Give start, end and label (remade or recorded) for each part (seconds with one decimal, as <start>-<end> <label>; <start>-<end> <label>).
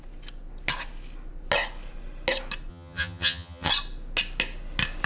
0.0-2.7 recorded; 2.7-3.7 remade; 3.7-5.1 recorded